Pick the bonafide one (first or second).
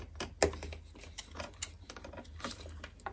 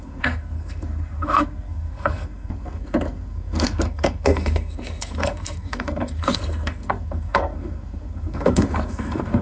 first